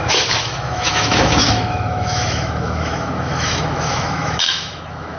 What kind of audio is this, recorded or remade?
remade